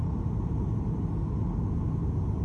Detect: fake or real real